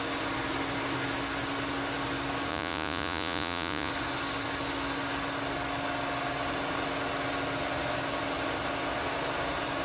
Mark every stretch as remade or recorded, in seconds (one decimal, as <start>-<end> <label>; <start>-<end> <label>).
0.0-2.5 recorded; 2.5-3.9 remade; 3.9-9.8 recorded